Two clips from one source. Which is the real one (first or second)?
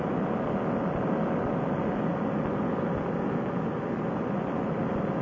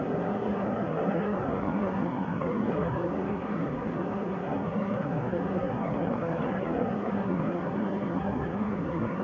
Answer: first